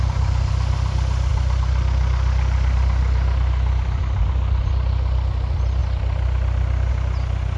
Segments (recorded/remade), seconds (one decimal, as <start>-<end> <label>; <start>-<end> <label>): 0.0-7.6 recorded